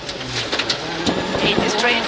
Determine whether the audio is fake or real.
real